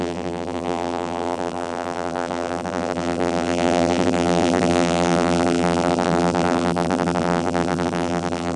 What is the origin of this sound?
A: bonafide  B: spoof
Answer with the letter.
B